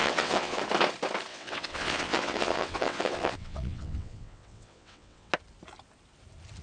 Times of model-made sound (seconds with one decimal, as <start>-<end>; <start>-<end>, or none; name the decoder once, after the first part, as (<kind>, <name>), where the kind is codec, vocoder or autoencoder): 0.0-0.6 (vocoder, WaveNeXt); 1.3-5.3